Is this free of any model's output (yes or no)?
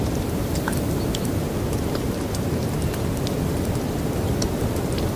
yes